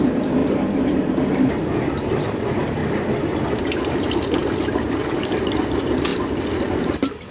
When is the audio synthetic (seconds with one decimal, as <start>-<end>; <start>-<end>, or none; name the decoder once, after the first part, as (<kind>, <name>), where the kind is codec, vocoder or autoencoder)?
0.0-0.4 (vocoder, BigVGAN v2); 2.1-2.8; 3.8-6.1; 6.7-7.3